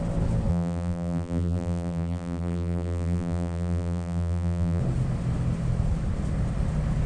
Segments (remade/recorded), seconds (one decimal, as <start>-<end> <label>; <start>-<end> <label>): 0.0-0.5 recorded; 0.5-4.8 remade; 4.8-7.1 recorded